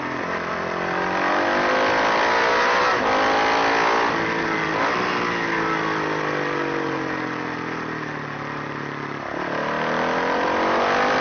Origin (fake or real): real